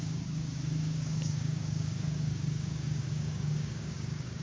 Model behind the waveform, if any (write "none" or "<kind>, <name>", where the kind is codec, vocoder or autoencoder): codec, DAC